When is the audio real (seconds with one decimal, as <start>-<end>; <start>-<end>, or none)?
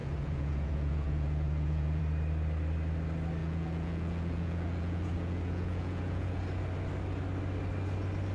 2.0-3.4; 6.4-8.3